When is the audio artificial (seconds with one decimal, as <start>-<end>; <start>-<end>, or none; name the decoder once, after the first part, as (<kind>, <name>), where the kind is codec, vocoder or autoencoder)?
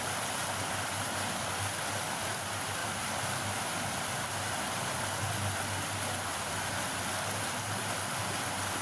none